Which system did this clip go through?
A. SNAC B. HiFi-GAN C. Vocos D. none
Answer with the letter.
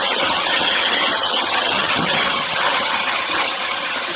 B